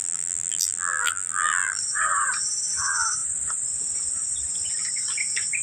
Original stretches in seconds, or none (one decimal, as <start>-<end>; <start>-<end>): 1.8-5.6